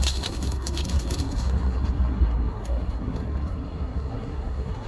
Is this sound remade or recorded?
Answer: remade